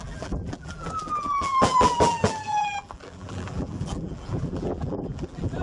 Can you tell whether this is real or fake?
fake